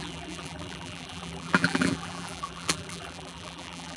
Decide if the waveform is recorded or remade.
remade